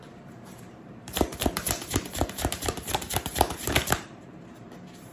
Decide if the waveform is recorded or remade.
remade